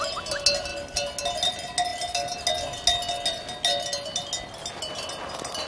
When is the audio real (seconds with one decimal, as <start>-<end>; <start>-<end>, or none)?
0.0-5.7